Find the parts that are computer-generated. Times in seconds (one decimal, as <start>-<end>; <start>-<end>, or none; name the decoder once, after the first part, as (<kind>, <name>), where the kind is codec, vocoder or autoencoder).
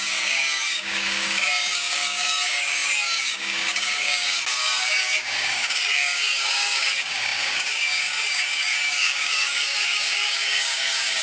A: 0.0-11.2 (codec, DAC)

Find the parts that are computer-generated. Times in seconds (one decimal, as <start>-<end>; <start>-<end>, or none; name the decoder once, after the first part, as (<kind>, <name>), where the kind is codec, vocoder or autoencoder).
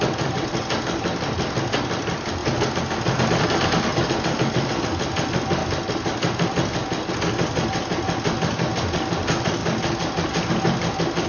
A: none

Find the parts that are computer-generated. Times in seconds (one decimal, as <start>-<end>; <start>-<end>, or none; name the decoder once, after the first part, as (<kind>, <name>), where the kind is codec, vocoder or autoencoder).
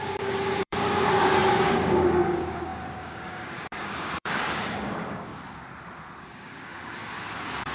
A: 0.0-5.3 (codec, DAC); 6.2-7.7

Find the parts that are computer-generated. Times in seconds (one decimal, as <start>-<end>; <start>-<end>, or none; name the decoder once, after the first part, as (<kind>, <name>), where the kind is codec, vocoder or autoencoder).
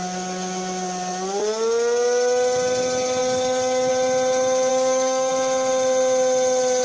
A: 3.2-3.9 (codec, DAC); 4.7-5.3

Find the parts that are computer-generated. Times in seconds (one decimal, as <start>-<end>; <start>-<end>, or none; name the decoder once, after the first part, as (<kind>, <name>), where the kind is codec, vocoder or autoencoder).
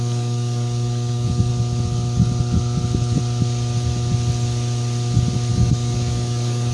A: 0.0-1.5 (codec, DAC); 5.5-6.7